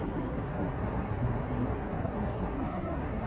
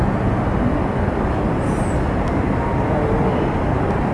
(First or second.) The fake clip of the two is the first